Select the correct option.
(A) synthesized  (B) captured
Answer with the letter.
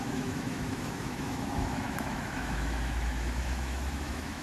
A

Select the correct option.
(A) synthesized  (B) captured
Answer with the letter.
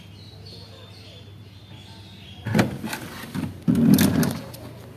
B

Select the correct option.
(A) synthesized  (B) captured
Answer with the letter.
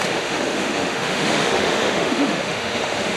A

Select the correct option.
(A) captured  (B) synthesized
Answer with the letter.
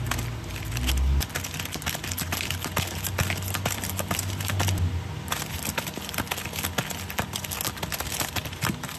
A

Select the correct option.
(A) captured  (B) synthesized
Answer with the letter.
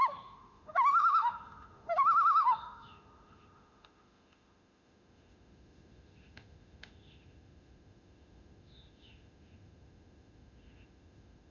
B